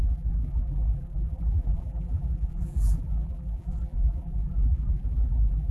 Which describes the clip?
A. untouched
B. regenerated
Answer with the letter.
B